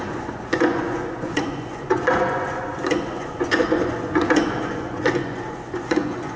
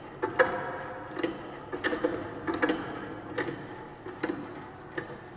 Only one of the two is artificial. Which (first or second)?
first